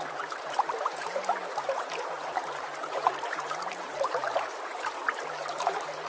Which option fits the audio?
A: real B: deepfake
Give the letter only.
B